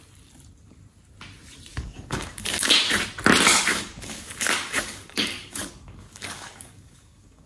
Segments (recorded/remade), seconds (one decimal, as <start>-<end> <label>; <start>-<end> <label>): 0.0-1.7 recorded; 1.7-2.7 remade; 2.7-3.5 recorded; 3.5-7.5 remade